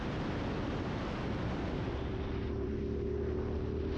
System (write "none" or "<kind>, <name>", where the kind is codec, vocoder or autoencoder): none